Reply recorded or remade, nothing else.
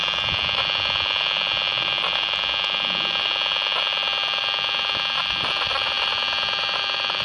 recorded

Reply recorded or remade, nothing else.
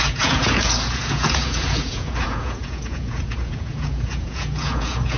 remade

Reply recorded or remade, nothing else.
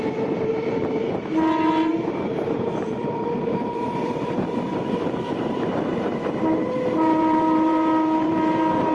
remade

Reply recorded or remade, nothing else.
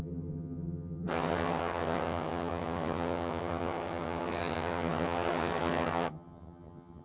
remade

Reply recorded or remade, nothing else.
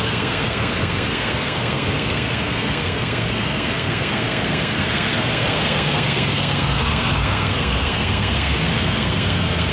remade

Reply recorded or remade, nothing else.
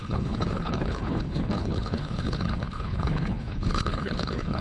remade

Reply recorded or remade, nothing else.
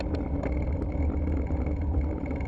recorded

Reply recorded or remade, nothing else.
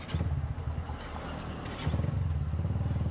recorded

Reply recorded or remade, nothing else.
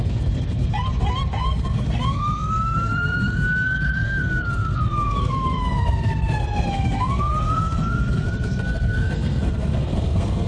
remade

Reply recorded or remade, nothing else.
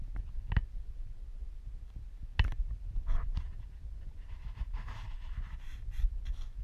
recorded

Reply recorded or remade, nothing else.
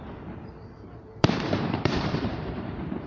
remade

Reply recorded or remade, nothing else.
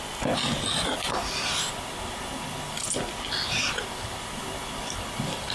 recorded